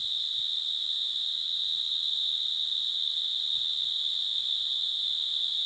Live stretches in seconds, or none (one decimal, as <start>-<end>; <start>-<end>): 0.0-5.7